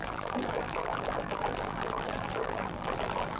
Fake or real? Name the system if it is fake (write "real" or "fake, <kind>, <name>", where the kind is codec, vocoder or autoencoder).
fake, vocoder, BigVGAN v2